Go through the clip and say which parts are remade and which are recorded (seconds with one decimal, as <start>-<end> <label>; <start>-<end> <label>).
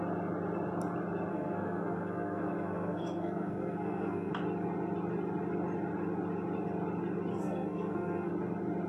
0.0-1.3 recorded; 1.3-4.3 remade; 4.3-7.3 recorded; 7.3-8.3 remade; 8.3-8.9 recorded